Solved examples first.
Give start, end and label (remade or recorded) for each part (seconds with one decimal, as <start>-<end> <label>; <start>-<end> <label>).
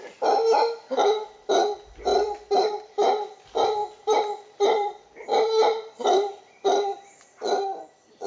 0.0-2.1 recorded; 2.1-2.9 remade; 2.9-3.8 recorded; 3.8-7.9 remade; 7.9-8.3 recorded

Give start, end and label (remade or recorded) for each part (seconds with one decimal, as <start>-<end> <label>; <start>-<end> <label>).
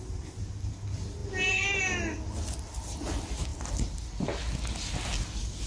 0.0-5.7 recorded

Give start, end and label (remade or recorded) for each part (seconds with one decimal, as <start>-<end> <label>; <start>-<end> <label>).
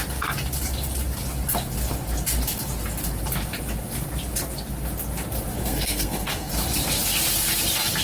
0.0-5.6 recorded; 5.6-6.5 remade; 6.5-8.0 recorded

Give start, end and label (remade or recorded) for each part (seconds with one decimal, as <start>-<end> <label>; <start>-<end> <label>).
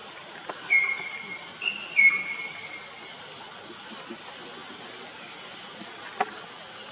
0.0-6.9 recorded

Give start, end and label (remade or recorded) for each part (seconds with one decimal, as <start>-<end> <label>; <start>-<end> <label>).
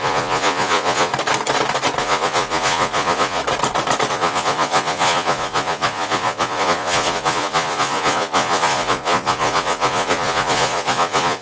0.0-1.1 remade; 1.1-2.0 recorded; 2.0-3.4 remade; 3.4-4.1 recorded; 4.1-11.4 remade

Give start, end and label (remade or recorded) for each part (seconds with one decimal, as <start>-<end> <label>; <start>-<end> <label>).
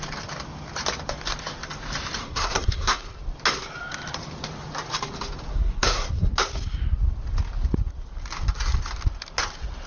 0.0-2.2 recorded; 2.2-3.1 remade; 3.1-5.5 recorded; 5.5-6.3 remade; 6.3-9.9 recorded